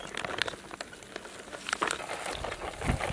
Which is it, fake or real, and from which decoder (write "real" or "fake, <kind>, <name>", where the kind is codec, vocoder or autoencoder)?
real